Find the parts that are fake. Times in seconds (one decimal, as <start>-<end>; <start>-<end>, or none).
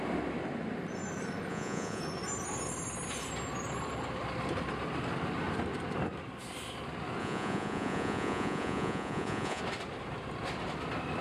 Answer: 1.5-2.0; 7.2-9.6